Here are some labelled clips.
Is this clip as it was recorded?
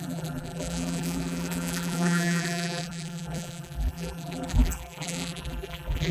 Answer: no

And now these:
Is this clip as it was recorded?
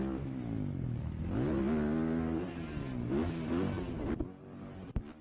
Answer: yes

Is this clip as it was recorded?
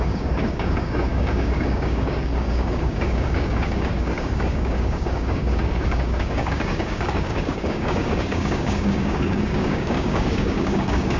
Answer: no